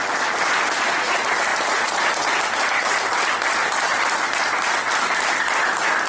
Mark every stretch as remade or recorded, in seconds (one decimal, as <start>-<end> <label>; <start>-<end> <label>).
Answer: 0.0-6.1 recorded